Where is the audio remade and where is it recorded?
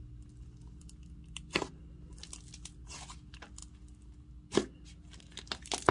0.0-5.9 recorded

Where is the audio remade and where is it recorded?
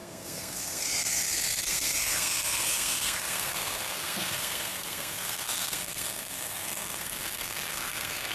0.0-8.3 remade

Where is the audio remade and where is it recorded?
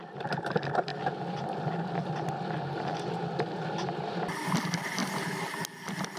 0.0-6.2 recorded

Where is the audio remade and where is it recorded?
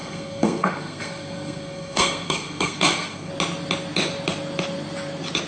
0.0-3.3 remade; 3.3-5.5 recorded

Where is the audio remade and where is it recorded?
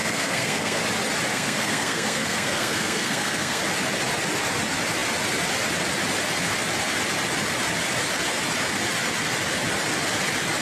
0.0-0.8 remade; 0.8-1.3 recorded; 1.3-3.6 remade; 3.6-10.6 recorded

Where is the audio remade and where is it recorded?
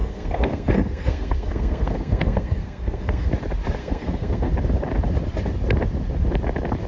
0.0-3.3 remade; 3.3-3.8 recorded; 3.8-4.5 remade; 4.5-6.9 recorded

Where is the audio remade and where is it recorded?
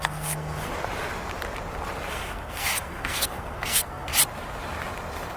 0.0-0.7 remade; 0.7-2.1 recorded; 2.1-4.1 remade; 4.1-5.4 recorded